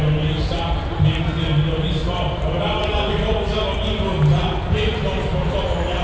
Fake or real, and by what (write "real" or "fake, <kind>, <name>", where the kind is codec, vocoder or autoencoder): real